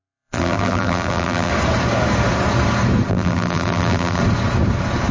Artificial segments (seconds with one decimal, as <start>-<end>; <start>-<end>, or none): 0.0-1.5; 3.1-4.2